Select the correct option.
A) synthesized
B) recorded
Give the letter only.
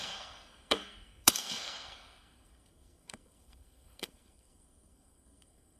A